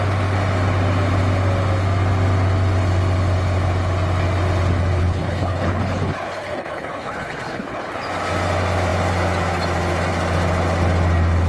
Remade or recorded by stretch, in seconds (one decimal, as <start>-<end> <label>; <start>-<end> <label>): 0.0-5.0 recorded; 5.0-7.9 remade; 7.9-11.5 recorded